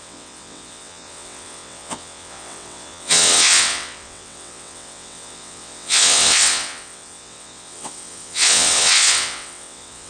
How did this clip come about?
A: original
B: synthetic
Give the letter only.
B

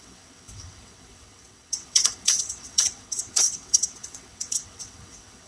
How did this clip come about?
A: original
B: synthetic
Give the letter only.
B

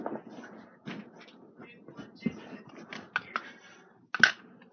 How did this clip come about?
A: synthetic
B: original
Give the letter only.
B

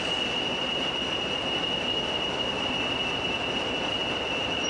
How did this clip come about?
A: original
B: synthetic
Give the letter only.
A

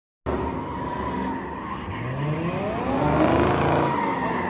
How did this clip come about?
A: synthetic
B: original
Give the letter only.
B